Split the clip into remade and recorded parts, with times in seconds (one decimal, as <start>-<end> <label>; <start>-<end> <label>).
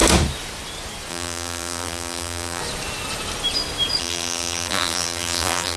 0.0-1.1 recorded; 1.1-2.6 remade; 2.6-4.0 recorded; 4.0-5.8 remade